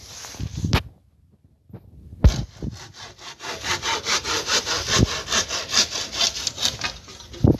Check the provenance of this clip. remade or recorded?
recorded